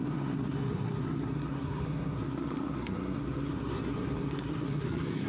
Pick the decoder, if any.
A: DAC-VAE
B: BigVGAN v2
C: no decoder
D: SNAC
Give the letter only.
D